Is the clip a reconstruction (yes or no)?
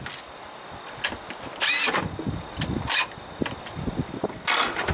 no